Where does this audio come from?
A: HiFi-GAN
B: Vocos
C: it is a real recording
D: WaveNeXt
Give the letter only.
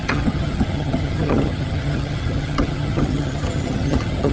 A